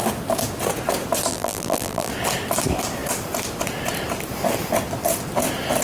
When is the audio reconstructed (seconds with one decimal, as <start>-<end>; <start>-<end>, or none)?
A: 1.3-2.1